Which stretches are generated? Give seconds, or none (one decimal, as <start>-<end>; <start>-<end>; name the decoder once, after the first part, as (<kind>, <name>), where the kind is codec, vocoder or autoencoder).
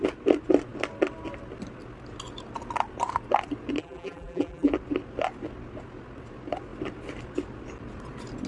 3.8-4.7 (vocoder, BigVGAN v2)